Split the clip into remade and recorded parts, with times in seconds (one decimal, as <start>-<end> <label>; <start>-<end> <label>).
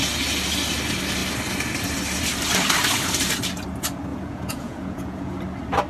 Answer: 0.0-4.1 recorded; 4.1-5.4 remade; 5.4-5.9 recorded